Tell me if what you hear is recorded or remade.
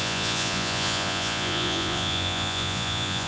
remade